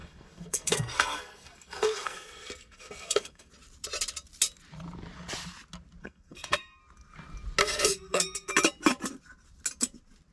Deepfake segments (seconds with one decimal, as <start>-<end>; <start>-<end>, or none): 0.0-3.5; 6.0-6.8; 7.6-8.5